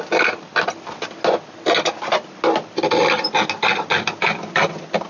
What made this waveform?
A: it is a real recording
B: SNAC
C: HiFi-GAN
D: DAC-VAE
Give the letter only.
A